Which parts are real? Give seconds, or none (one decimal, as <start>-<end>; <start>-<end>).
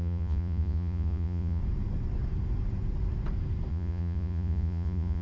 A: 1.6-3.7